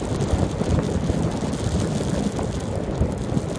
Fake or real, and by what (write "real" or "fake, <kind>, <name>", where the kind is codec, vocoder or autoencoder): real